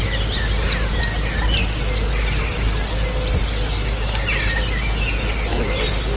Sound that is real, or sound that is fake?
real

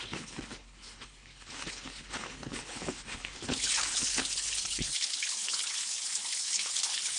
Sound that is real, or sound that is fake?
fake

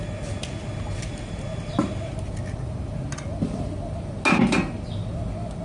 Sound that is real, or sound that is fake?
real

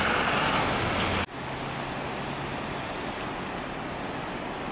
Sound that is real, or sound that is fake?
real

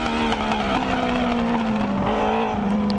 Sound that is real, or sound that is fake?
real